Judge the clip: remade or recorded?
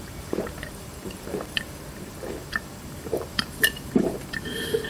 remade